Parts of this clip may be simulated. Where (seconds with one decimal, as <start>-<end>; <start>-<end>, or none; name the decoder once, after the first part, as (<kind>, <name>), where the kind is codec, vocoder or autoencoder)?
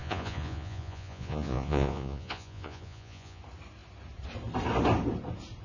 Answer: 0.0-3.4 (vocoder, Vocos)